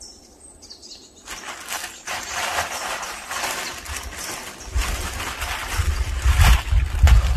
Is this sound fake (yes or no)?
no